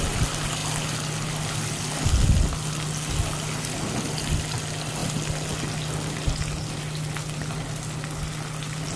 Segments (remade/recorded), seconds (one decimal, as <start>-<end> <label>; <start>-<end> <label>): 0.0-9.0 recorded